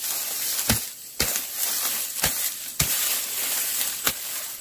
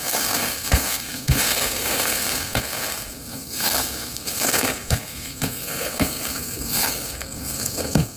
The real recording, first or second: first